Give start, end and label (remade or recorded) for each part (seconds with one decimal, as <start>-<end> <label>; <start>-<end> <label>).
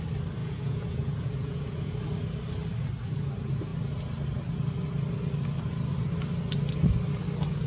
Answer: 0.0-0.4 recorded; 0.4-1.9 remade; 1.9-7.7 recorded